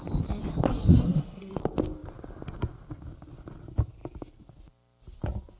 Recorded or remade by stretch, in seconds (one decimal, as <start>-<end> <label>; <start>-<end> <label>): 0.0-0.7 recorded; 0.7-1.5 remade; 1.5-5.6 recorded

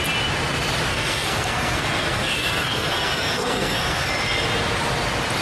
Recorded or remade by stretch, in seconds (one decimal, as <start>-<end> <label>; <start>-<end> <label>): 0.0-0.9 recorded; 0.9-4.1 remade; 4.1-5.4 recorded

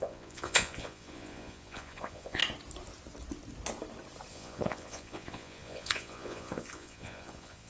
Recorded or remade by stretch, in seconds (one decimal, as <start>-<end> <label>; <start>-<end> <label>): 0.0-2.4 remade; 2.4-4.3 recorded; 4.3-7.7 remade

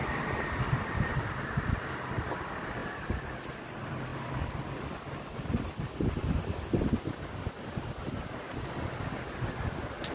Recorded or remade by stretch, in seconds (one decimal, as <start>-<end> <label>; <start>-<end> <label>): 0.0-2.8 recorded; 2.8-3.4 remade; 3.4-10.1 recorded

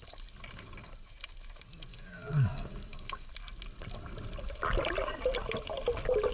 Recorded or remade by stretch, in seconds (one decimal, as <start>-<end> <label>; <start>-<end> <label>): 0.0-1.9 recorded; 1.9-3.3 remade; 3.3-6.3 recorded

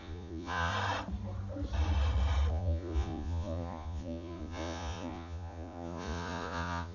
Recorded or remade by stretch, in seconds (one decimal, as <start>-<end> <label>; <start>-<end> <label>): 0.0-0.7 remade; 0.7-2.5 recorded; 2.5-6.9 remade